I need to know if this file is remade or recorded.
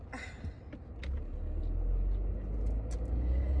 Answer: recorded